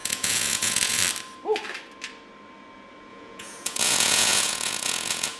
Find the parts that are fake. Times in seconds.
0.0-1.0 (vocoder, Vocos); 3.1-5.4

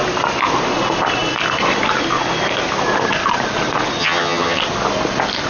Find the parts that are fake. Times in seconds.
4.0-4.6 (vocoder, HiFi-GAN)